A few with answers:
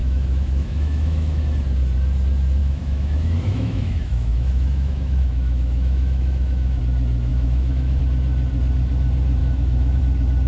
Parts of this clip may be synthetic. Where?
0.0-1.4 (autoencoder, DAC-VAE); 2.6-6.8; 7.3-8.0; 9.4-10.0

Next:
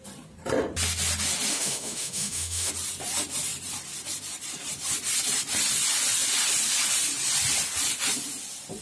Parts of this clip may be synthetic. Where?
1.5-2.7 (autoencoder, DAC-VAE)

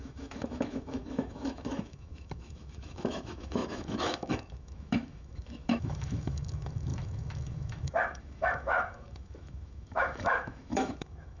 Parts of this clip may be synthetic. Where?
0.0-11.4 (autoencoder, DAC-VAE)